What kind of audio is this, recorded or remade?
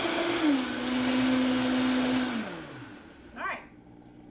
recorded